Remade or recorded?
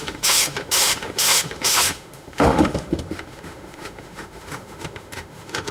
remade